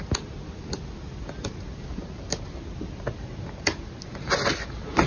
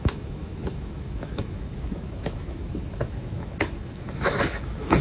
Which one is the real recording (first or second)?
first